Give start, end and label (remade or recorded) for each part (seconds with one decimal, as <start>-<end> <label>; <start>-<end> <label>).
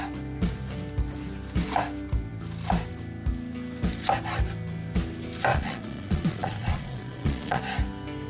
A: 0.0-5.5 recorded; 5.5-7.6 remade; 7.6-8.3 recorded